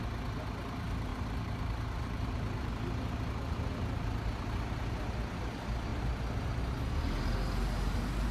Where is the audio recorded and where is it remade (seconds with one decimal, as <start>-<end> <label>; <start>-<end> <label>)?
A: 0.0-1.1 recorded; 1.1-2.7 remade; 2.7-8.3 recorded